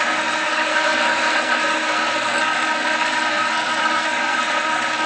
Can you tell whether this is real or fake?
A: fake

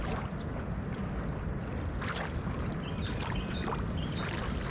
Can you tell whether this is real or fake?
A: real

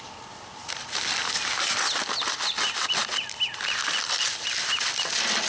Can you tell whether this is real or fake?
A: real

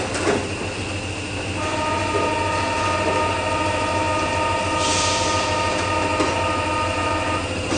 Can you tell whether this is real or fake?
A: real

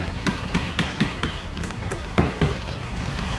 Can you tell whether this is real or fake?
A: fake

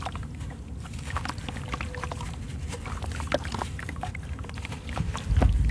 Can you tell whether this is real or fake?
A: real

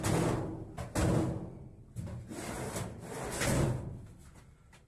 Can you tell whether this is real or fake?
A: real